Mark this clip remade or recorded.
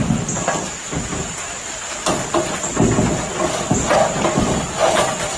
recorded